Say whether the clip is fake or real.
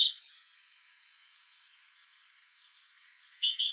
fake